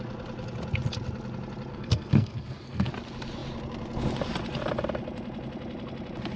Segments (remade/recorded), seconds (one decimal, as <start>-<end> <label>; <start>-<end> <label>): 0.0-1.7 recorded; 1.7-2.9 remade; 2.9-6.4 recorded